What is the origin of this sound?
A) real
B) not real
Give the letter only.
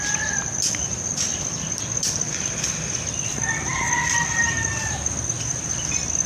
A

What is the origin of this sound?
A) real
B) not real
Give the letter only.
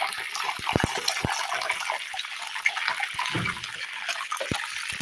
A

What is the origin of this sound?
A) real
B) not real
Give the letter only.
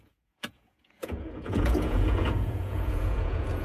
B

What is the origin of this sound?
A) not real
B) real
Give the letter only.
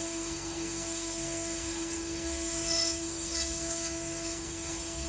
A